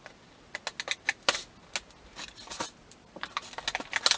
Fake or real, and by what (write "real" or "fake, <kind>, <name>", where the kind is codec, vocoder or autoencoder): real